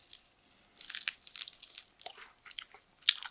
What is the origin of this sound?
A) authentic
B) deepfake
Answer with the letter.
A